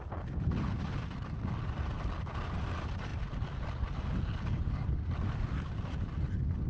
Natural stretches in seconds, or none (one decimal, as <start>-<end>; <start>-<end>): 0.0-6.7